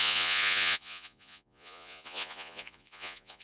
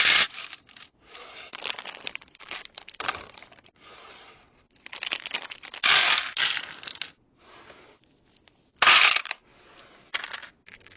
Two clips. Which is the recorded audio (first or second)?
second